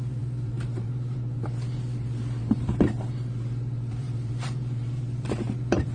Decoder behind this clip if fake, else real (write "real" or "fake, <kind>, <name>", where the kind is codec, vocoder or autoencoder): fake, vocoder, BigVGAN v2